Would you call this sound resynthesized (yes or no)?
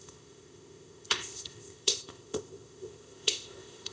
yes